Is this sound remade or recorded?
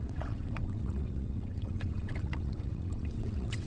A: remade